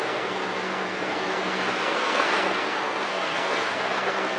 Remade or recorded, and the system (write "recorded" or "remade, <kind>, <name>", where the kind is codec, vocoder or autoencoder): remade, codec, SNAC